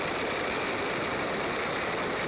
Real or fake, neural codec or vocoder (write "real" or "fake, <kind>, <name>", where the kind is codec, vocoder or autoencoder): real